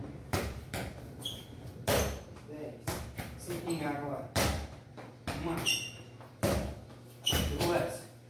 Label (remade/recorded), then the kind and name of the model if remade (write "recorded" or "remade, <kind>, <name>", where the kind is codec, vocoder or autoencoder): remade, vocoder, BigVGAN v2